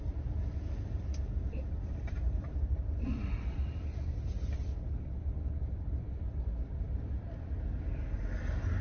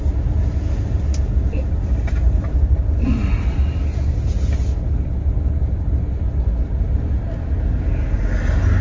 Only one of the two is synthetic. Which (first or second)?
first